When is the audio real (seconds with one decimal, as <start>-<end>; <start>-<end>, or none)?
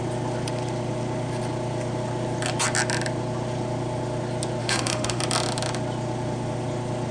0.0-4.6; 5.2-7.1